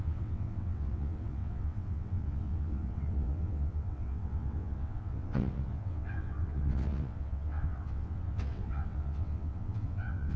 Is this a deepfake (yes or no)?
yes